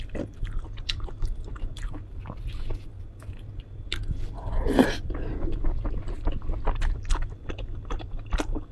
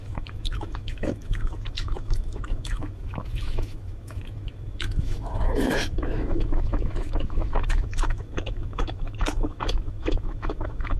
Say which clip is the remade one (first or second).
second